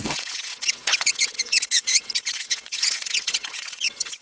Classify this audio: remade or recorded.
remade